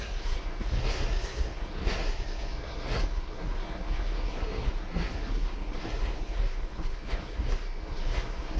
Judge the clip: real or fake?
fake